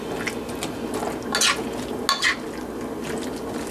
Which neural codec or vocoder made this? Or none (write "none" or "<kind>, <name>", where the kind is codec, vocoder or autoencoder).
none